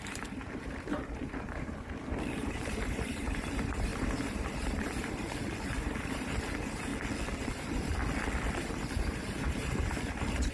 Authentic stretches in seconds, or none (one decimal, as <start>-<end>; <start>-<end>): 6.9-7.5; 7.9-8.6